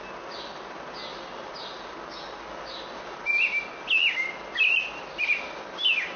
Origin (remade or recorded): recorded